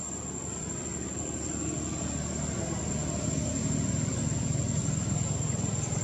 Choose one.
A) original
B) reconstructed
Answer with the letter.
A